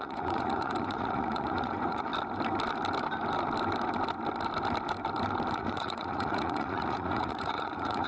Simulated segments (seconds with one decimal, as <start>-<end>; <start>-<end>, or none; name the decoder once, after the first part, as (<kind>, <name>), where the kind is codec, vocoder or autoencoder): 0.0-2.1 (vocoder, Vocos); 5.5-8.1